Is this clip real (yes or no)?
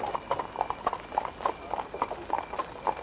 yes